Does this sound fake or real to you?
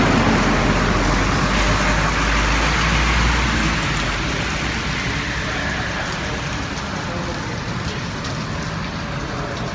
real